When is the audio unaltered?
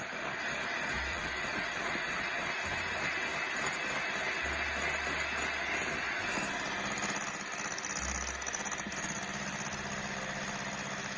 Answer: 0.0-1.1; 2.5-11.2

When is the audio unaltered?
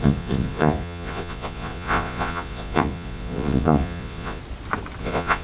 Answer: 4.4-5.0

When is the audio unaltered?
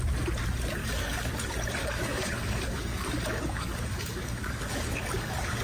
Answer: 0.0-0.8; 1.3-1.8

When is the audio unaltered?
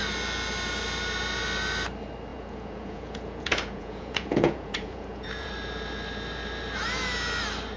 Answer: 0.0-2.3; 5.5-7.8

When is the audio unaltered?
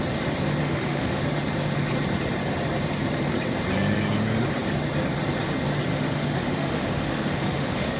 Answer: 0.0-0.6; 1.2-5.9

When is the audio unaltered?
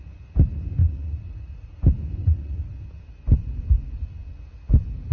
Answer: 0.0-0.8; 1.8-2.2; 2.7-5.1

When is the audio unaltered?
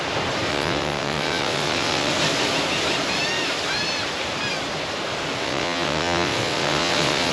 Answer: 0.0-0.5; 2.1-5.4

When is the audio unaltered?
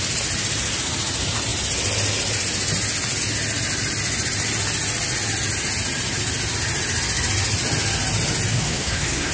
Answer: 0.0-8.5